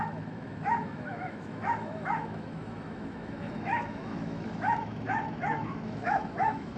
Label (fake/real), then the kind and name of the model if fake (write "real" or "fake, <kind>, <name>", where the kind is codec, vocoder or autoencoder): fake, autoencoder, DAC-VAE